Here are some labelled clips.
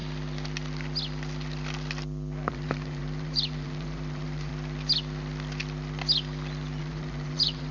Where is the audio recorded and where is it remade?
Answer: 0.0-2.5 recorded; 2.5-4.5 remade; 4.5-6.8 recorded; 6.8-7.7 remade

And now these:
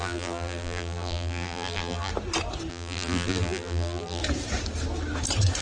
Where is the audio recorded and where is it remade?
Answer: 0.0-2.1 remade; 2.1-2.7 recorded; 2.7-4.2 remade; 4.2-5.6 recorded

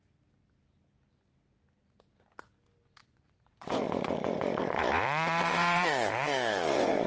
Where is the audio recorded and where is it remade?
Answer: 0.0-3.0 recorded; 3.0-7.1 remade